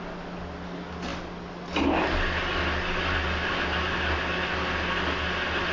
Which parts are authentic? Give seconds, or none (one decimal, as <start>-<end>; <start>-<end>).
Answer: 0.0-5.7